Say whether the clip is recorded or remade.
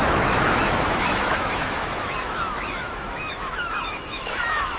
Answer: remade